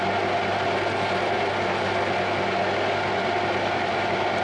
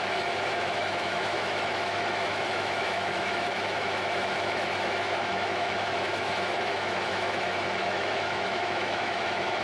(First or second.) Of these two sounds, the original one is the first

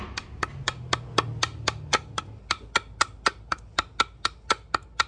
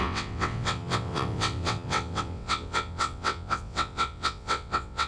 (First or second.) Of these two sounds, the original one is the first